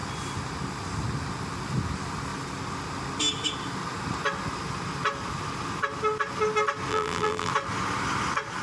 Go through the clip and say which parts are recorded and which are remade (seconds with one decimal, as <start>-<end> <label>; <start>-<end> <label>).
0.0-6.9 recorded; 6.9-7.5 remade; 7.5-8.6 recorded